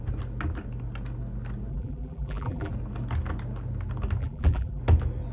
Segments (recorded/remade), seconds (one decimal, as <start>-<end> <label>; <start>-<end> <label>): 0.0-1.7 recorded; 1.7-2.7 remade; 2.7-4.2 recorded; 4.2-4.8 remade; 4.8-5.3 recorded